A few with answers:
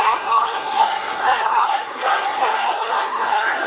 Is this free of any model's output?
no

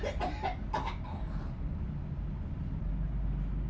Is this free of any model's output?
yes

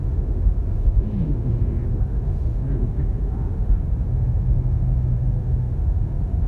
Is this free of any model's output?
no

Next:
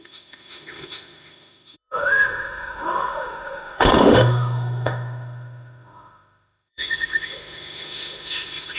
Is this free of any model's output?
no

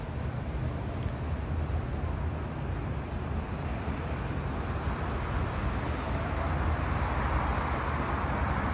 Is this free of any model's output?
yes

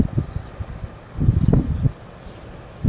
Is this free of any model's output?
yes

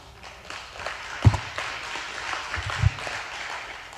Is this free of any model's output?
yes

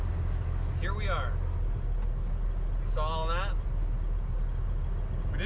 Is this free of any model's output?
yes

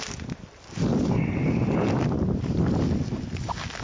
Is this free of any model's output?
yes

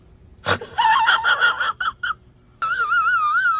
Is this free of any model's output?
yes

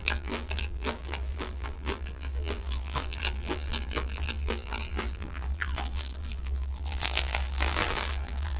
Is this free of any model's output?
no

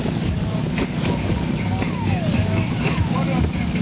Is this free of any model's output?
no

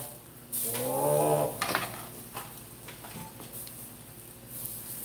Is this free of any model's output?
yes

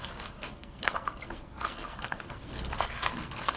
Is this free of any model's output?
no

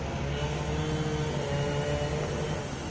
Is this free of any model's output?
yes